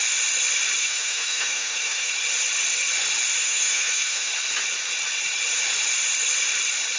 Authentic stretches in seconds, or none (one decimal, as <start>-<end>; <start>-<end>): 0.0-0.8; 2.1-3.4; 4.3-7.0